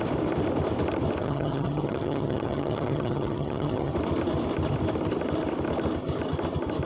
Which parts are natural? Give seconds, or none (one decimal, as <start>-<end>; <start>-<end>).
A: 0.0-1.2; 3.9-6.9